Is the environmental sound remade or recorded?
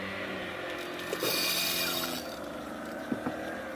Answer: recorded